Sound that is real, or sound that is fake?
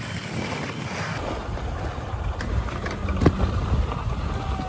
real